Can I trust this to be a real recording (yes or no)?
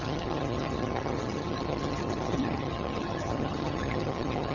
no